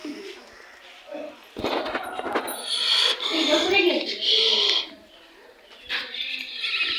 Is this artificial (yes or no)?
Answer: no